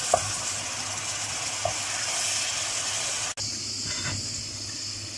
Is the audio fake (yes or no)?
no